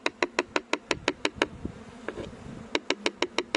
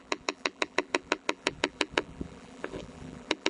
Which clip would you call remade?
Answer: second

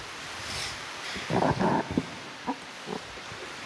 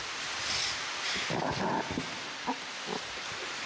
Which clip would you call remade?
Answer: first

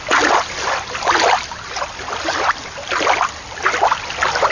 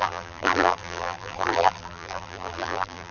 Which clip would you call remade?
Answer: second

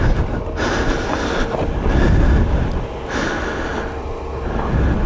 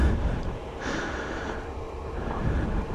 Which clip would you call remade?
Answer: second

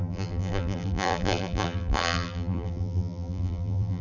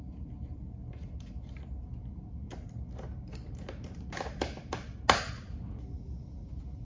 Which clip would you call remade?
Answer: first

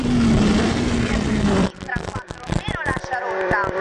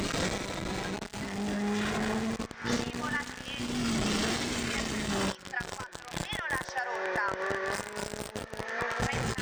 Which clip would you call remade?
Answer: first